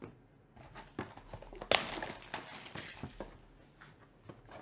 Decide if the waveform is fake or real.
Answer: real